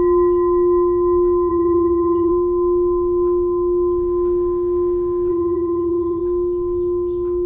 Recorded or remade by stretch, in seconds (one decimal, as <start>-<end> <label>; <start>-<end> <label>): 0.0-1.5 recorded; 1.5-2.3 remade; 2.3-5.3 recorded; 5.3-6.2 remade; 6.2-7.5 recorded